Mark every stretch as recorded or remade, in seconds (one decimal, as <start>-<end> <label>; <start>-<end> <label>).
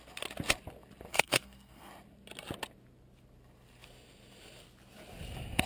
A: 0.0-1.1 recorded; 1.1-1.9 remade; 1.9-5.7 recorded